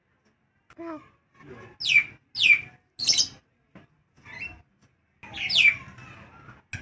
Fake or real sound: real